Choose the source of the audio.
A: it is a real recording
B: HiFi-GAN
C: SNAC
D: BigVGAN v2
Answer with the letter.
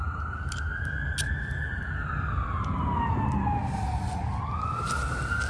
A